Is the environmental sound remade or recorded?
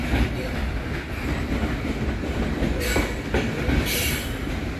recorded